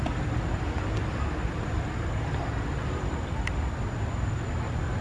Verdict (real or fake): real